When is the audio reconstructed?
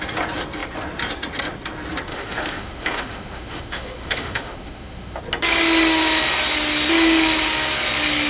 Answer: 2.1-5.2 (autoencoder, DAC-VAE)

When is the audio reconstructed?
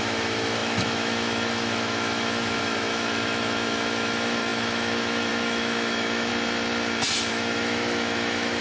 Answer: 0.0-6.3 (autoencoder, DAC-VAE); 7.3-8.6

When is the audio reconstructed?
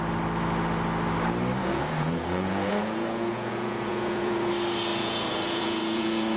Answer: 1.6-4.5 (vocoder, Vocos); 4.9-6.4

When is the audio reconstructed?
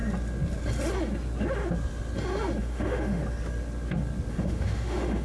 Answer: 2.6-3.2 (autoencoder, DAC-VAE); 4.3-5.2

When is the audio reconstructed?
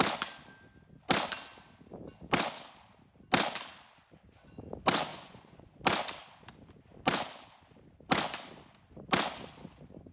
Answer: 5.1-5.8 (vocoder, Vocos)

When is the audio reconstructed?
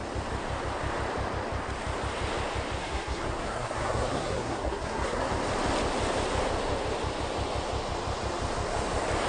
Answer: 2.8-5.3 (codec, SNAC)